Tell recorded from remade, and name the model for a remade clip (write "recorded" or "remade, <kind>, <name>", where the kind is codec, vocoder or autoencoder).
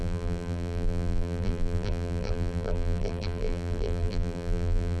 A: remade, vocoder, BigVGAN v2